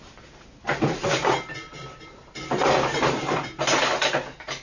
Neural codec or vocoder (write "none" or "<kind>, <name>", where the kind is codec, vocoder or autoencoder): none